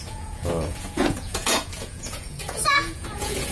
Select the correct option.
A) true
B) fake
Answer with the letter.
B